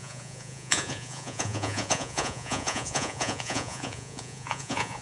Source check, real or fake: fake